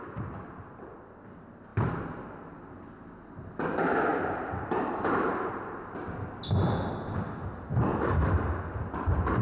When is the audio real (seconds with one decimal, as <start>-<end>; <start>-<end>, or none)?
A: 0.0-4.1; 6.1-7.9; 8.4-9.4